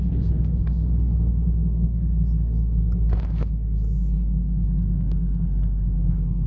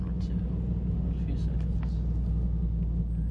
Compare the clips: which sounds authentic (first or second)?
second